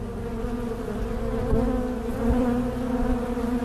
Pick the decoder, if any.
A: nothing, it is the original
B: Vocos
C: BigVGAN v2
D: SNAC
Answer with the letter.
A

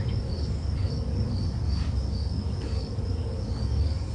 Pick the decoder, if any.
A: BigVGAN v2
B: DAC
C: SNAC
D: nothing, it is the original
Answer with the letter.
B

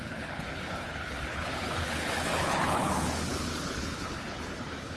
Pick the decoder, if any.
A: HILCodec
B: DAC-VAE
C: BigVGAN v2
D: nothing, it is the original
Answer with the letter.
A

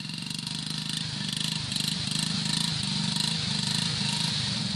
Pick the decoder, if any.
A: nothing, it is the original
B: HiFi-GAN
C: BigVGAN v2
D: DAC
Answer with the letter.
A